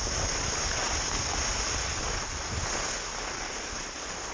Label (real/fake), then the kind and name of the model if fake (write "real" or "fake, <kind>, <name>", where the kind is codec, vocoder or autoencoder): real